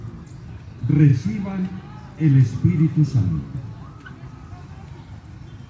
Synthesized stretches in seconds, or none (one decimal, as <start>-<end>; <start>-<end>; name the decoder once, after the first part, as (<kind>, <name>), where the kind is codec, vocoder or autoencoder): none